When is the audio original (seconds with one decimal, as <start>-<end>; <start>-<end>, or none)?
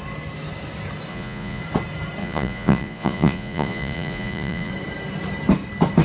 0.0-1.1; 1.6-2.2; 4.7-6.0